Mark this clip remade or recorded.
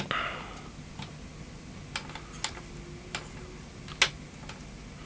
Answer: recorded